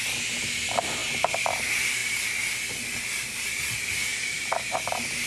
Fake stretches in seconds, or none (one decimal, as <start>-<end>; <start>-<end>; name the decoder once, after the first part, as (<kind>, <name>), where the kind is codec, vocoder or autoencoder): none